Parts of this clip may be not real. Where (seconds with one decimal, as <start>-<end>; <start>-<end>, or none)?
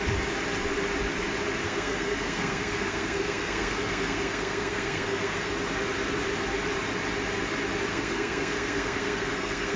1.6-5.5; 7.9-9.8